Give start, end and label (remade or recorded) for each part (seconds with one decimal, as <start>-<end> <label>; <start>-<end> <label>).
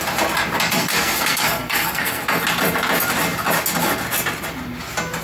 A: 0.0-0.8 recorded; 0.8-2.2 remade; 2.2-5.2 recorded